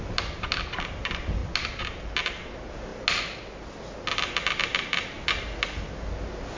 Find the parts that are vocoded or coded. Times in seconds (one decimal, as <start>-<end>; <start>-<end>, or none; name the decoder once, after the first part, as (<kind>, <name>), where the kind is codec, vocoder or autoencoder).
none